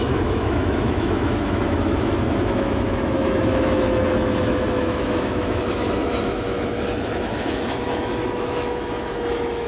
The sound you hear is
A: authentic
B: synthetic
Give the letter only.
B